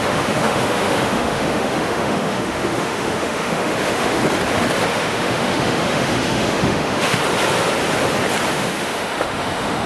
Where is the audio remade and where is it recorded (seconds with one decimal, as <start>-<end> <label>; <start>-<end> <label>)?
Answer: 0.0-4.2 remade; 4.2-4.9 recorded; 4.9-7.2 remade; 7.2-8.5 recorded; 8.5-9.9 remade